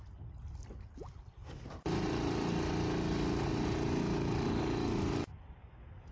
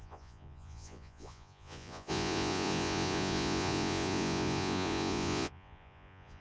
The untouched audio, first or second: first